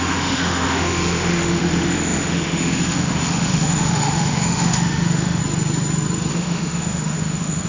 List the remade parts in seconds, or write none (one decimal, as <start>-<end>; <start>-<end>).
0.0-5.4; 6.3-7.7